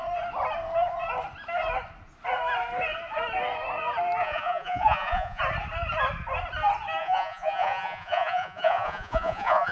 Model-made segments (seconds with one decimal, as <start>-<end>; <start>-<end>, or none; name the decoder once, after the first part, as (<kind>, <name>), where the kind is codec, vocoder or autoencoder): 4.2-5.4 (vocoder, Vocos); 7.0-9.7